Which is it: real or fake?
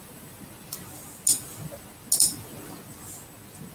real